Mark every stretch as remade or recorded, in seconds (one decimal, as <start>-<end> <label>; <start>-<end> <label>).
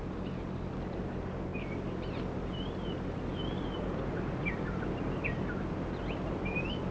0.0-6.9 recorded